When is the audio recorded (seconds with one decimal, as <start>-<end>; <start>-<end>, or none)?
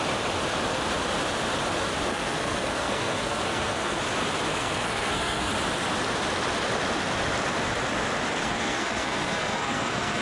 0.0-2.1; 4.0-4.5; 5.5-8.4